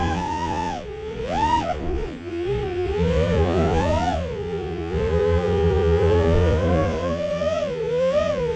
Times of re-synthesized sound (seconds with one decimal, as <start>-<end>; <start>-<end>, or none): 0.0-8.6